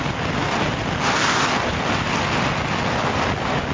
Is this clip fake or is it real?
real